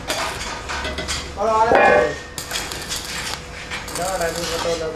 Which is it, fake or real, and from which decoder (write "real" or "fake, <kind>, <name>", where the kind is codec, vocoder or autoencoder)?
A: real